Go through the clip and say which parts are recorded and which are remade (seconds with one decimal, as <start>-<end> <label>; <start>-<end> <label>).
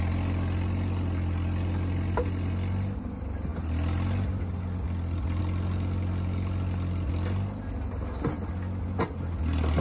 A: 0.0-9.8 recorded